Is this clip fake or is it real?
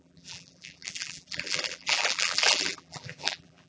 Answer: fake